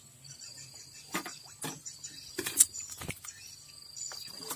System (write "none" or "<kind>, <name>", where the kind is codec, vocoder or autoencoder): none